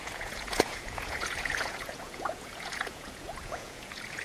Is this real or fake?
fake